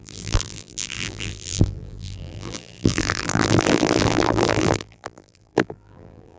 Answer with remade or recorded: remade